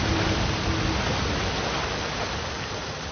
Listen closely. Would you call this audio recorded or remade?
recorded